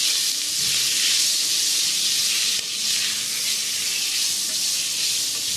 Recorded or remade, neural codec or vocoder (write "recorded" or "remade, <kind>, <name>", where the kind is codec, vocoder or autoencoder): recorded